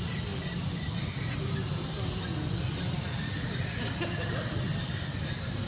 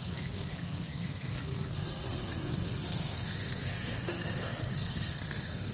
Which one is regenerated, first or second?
second